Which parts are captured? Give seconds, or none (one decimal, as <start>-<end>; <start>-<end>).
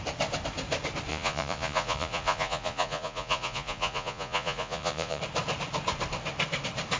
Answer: 0.0-1.1; 5.2-7.0